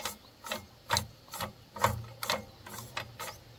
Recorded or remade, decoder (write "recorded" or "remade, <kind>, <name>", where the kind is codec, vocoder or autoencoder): recorded